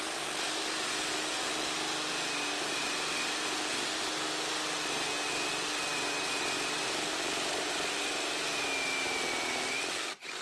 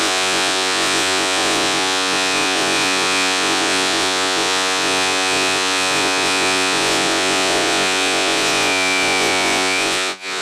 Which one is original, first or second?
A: first